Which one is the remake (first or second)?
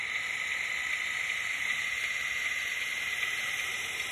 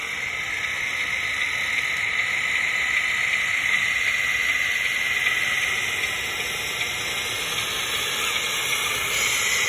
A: first